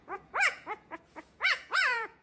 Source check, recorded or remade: remade